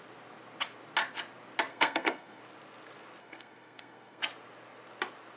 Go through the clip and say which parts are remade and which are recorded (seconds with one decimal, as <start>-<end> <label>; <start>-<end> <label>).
0.0-1.7 recorded; 1.7-2.4 remade; 2.4-3.2 recorded; 3.2-4.2 remade; 4.2-5.4 recorded